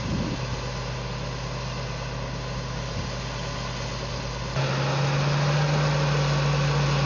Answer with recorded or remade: recorded